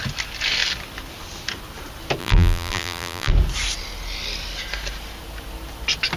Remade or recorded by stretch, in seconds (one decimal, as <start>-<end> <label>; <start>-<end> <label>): 0.0-2.2 recorded; 2.2-3.3 remade; 3.3-6.2 recorded